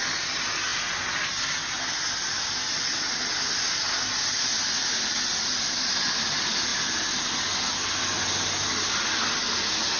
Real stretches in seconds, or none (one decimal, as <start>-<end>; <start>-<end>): 0.0-10.0